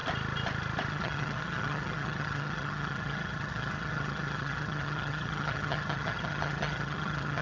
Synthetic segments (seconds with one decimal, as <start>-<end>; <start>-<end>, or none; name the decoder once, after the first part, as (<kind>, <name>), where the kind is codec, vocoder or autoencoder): 0.9-7.4 (vocoder, HiFi-GAN)